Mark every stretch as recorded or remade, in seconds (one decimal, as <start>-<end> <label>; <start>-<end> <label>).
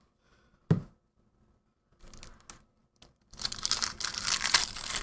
0.0-5.0 recorded